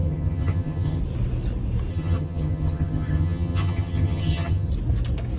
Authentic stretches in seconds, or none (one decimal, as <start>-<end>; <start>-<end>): 1.0-1.9; 4.7-5.4